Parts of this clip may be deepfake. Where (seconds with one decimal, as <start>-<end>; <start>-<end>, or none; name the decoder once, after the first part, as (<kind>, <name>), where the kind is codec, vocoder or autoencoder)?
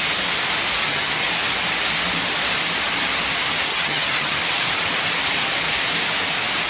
0.8-1.3 (vocoder, HiFi-GAN); 3.7-4.4